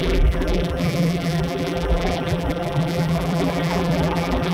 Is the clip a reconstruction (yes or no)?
yes